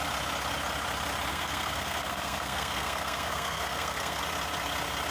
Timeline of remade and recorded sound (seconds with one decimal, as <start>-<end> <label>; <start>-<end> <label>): 0.0-1.3 recorded; 1.3-4.2 remade; 4.2-5.1 recorded